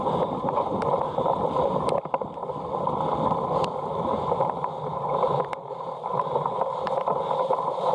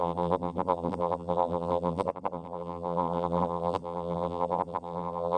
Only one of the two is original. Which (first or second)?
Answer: first